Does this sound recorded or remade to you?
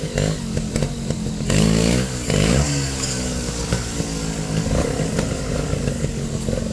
remade